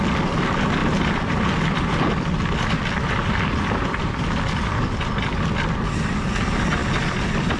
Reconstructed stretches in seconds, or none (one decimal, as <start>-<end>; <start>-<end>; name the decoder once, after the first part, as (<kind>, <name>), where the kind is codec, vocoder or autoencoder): 0.8-4.0 (vocoder, BigVGAN v2)